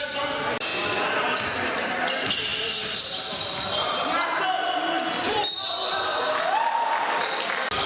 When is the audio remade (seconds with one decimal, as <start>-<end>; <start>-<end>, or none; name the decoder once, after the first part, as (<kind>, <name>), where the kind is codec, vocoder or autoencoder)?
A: none